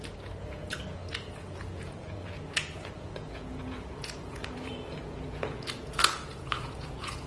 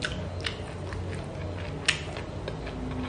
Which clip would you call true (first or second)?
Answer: second